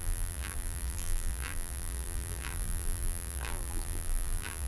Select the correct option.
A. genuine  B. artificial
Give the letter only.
B